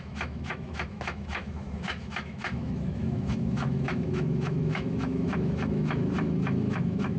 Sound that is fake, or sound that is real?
fake